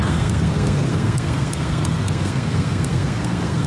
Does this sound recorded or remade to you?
remade